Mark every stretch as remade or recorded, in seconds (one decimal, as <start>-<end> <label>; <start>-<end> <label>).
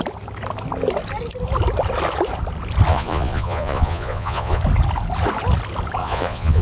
0.0-2.9 recorded; 2.9-4.6 remade; 4.6-6.0 recorded; 6.0-6.6 remade